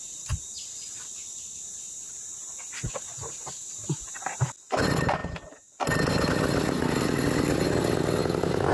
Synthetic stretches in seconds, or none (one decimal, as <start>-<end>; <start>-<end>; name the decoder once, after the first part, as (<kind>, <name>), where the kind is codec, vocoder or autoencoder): none